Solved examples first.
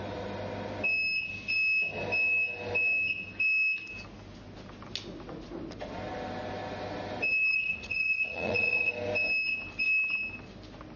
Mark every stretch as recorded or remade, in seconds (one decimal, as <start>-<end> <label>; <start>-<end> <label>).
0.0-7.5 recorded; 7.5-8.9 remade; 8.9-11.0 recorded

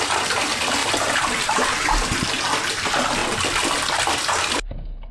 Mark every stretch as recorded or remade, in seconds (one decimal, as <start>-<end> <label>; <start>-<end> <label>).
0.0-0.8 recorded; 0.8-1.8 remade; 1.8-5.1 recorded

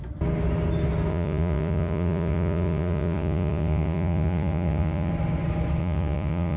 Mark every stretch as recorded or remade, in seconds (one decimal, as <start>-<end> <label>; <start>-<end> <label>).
0.0-1.1 recorded; 1.1-5.1 remade; 5.1-5.8 recorded; 5.8-6.6 remade

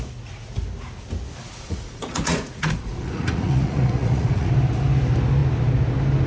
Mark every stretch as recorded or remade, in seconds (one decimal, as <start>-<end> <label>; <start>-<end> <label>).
0.0-1.4 recorded; 1.4-4.5 remade; 4.5-6.3 recorded

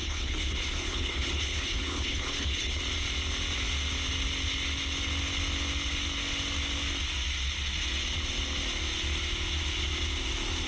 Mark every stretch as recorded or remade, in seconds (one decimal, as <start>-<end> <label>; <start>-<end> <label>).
0.0-2.8 remade; 2.8-10.7 recorded

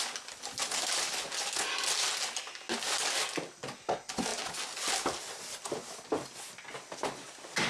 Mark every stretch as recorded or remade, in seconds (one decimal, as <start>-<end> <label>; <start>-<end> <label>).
0.0-7.7 recorded